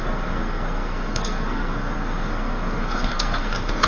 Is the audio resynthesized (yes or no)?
yes